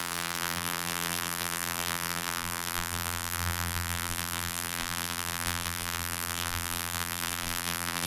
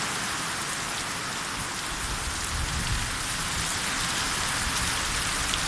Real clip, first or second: second